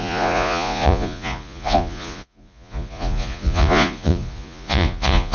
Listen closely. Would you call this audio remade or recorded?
remade